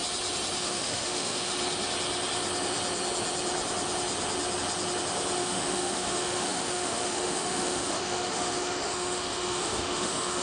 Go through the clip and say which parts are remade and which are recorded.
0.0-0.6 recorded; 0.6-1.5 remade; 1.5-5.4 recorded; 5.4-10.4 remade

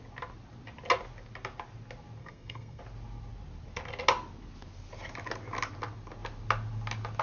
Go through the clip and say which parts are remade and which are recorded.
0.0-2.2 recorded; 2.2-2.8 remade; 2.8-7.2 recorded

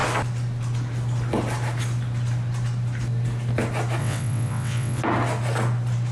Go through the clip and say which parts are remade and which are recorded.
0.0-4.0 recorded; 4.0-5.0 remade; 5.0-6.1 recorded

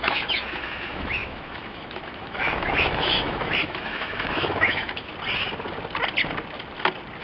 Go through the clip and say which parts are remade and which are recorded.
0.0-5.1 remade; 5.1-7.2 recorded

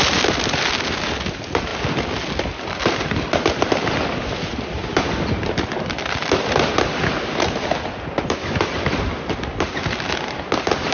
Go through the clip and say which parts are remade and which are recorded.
0.0-10.9 recorded